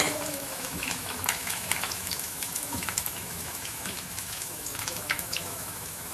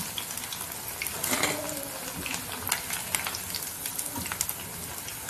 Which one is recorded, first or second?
second